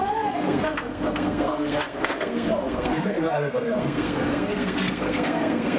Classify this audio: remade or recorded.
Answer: remade